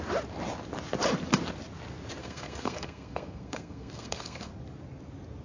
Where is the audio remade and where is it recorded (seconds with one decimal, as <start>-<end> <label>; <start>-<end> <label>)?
0.0-2.2 recorded; 2.2-4.5 remade; 4.5-5.4 recorded

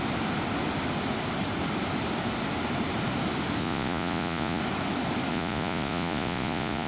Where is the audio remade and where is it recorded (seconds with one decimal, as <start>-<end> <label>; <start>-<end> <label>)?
0.0-3.6 recorded; 3.6-4.6 remade; 4.6-5.3 recorded; 5.3-6.9 remade

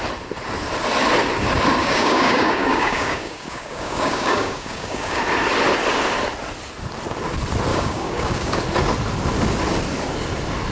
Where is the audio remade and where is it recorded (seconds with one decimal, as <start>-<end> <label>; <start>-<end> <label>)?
0.0-1.8 recorded; 1.8-5.2 remade; 5.2-7.7 recorded; 7.7-8.6 remade; 8.6-10.7 recorded

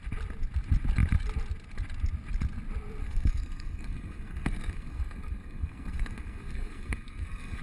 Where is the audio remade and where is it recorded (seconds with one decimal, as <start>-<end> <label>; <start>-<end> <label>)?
0.0-3.0 recorded; 3.0-7.6 remade

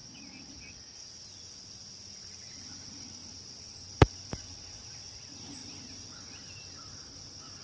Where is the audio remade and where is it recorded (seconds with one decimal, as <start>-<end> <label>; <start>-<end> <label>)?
0.0-3.2 recorded; 3.2-4.9 remade; 4.9-5.6 recorded; 5.6-6.2 remade; 6.2-6.8 recorded; 6.8-7.6 remade